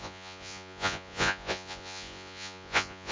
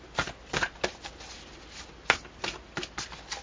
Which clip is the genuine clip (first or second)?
second